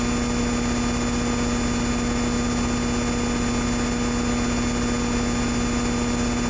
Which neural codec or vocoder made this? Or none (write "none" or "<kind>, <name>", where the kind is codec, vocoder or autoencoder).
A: none